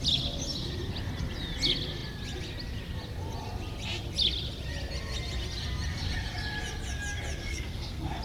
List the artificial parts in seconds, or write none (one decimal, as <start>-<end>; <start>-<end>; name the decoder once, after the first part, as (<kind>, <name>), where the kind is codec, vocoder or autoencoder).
7.4-8.2 (codec, SNAC)